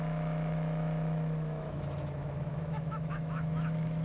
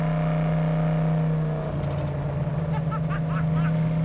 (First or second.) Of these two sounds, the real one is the second